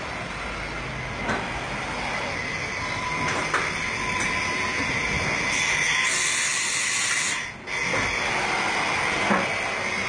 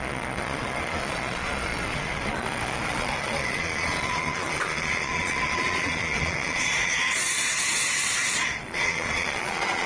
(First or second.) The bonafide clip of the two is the first